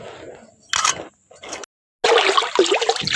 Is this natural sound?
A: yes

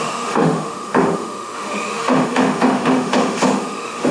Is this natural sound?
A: no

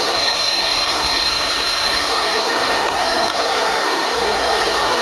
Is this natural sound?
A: no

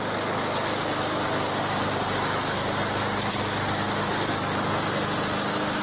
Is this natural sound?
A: yes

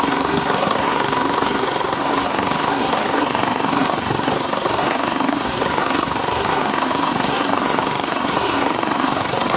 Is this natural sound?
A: no